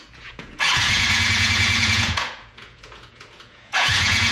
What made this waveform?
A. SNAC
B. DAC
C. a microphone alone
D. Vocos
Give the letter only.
D